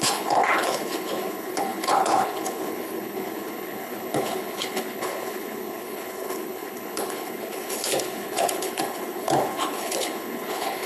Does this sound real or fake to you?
fake